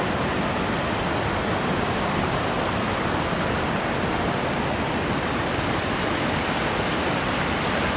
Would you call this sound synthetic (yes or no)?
no